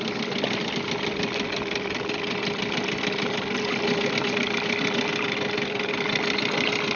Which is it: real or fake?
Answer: real